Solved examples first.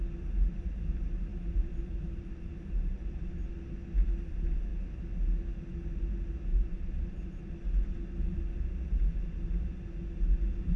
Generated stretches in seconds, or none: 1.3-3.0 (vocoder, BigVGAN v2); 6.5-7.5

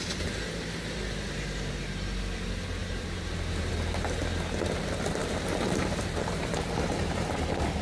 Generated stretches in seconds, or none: 2.8-3.7 (vocoder, BigVGAN v2); 5.2-7.3

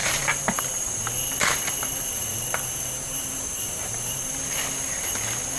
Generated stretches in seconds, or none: 0.0-1.0 (vocoder, BigVGAN v2); 2.2-4.4

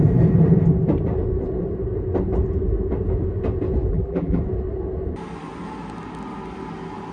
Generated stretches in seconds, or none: 3.9-4.4 (vocoder, BigVGAN v2)

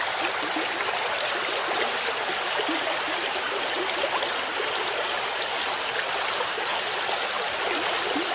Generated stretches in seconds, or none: 0.0-6.7 (vocoder, BigVGAN v2); 7.4-8.3

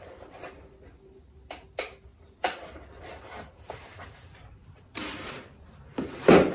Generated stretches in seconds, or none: 0.0-6.5 (vocoder, BigVGAN v2)

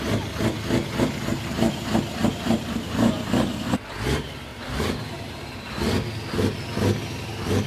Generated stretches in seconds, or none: 1.3-3.2 (vocoder, BigVGAN v2); 4.5-5.8